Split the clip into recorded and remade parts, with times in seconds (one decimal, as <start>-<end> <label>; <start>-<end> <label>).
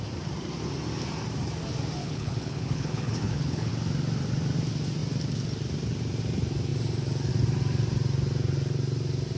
0.0-2.0 recorded; 2.0-3.7 remade; 3.7-9.4 recorded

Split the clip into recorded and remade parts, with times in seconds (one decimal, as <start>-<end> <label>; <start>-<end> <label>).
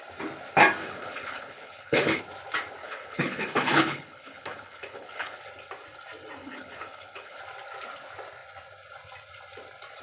0.0-0.8 recorded; 0.8-2.2 remade; 2.2-2.8 recorded; 2.8-5.4 remade; 5.4-6.4 recorded; 6.4-7.4 remade; 7.4-10.0 recorded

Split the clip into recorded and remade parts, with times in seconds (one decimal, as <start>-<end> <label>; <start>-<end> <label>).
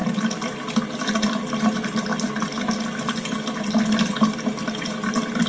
0.0-5.5 recorded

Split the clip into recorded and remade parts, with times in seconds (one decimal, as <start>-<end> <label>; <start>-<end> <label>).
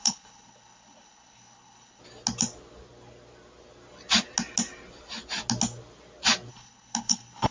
0.0-2.0 remade; 2.0-6.5 recorded; 6.5-7.5 remade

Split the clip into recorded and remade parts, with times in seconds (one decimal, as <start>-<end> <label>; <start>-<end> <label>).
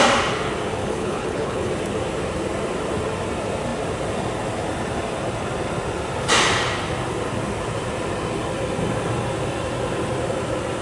0.0-0.8 recorded; 0.8-1.7 remade; 1.7-10.8 recorded